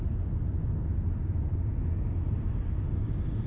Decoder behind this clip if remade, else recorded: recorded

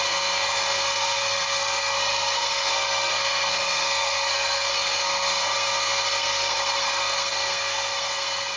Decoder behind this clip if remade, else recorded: remade, codec, SNAC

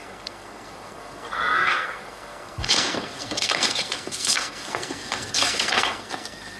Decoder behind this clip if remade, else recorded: remade, codec, SNAC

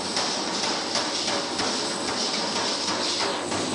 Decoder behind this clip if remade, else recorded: recorded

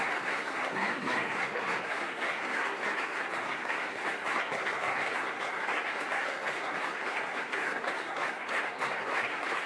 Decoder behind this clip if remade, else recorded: remade, codec, SNAC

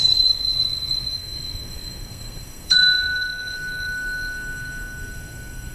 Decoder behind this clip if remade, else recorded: remade, codec, SNAC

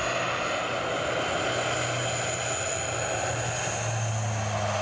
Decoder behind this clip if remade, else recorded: recorded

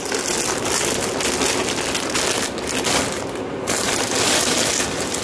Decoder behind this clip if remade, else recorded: recorded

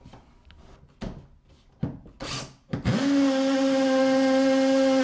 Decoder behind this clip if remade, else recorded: recorded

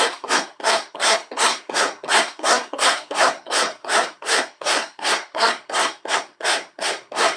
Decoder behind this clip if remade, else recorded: remade, codec, SNAC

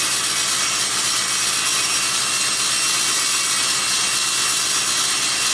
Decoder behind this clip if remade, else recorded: recorded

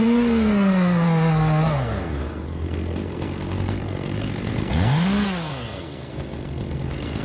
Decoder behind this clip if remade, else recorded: remade, codec, SNAC